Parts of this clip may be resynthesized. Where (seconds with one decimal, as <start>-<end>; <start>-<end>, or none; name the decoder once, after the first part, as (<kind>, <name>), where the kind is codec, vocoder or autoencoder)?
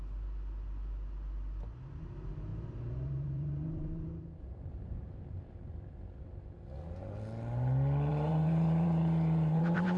2.5-5.4 (vocoder, BigVGAN v2); 8.1-10.0